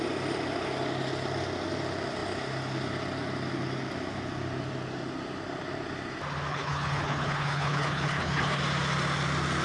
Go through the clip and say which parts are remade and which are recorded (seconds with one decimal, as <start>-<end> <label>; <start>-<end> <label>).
0.0-6.5 recorded; 6.5-8.6 remade; 8.6-9.6 recorded